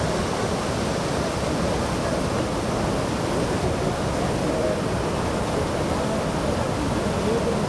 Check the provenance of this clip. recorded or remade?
recorded